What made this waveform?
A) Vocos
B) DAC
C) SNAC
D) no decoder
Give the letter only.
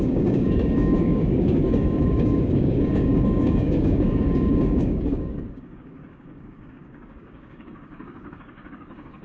B